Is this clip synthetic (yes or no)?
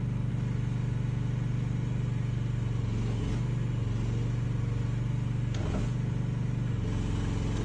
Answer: no